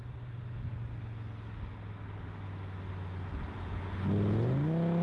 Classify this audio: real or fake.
real